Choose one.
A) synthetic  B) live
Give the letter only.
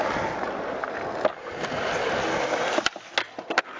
B